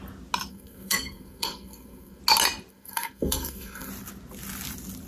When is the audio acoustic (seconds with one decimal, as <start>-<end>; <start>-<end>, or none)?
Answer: 0.0-0.5; 2.2-2.7; 3.9-5.1